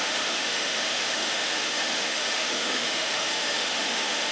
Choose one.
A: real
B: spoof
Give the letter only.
B